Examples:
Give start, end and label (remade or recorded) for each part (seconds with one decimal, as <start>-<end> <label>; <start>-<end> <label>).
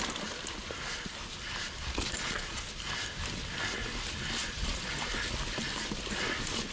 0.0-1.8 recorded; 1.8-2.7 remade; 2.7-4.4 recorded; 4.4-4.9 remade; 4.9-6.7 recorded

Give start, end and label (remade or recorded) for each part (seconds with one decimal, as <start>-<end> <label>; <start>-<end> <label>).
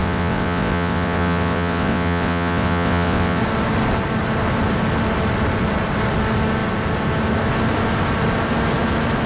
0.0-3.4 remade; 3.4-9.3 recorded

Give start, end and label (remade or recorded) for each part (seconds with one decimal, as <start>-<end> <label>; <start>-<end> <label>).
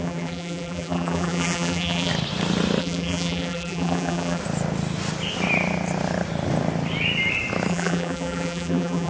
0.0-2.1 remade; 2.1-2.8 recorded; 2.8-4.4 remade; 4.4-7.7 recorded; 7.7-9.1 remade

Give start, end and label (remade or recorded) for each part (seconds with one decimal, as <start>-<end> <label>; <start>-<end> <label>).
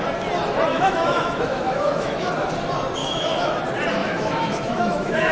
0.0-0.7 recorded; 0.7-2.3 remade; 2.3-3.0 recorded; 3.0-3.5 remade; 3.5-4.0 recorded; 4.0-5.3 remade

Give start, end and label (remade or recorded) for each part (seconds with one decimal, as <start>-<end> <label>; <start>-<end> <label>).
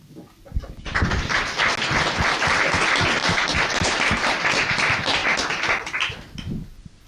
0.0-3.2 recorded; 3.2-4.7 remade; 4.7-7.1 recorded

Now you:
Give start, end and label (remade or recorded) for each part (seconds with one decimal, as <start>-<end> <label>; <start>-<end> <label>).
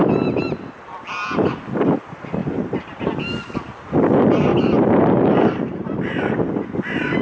0.0-2.4 recorded; 2.4-3.1 remade; 3.1-4.5 recorded; 4.5-6.3 remade; 6.3-7.2 recorded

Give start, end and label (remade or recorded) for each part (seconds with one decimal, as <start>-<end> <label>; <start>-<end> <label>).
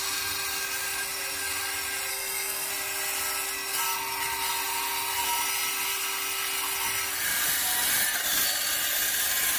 0.0-2.1 recorded; 2.1-2.7 remade; 2.7-9.6 recorded